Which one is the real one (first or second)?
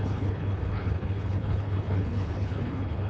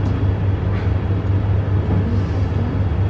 second